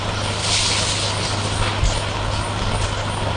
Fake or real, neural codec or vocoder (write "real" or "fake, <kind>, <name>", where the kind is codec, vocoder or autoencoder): real